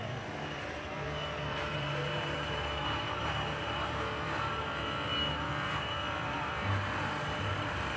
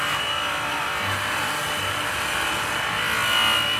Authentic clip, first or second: second